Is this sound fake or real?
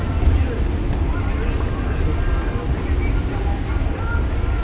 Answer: real